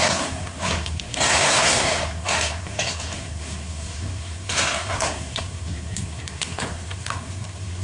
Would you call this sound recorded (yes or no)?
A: no